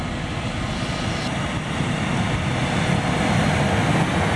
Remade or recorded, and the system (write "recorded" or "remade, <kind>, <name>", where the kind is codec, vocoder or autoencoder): recorded